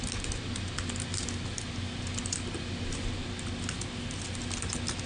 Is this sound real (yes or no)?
yes